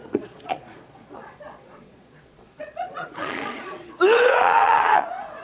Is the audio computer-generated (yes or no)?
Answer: yes